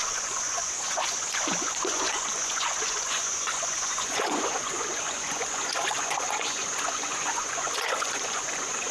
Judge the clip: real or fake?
fake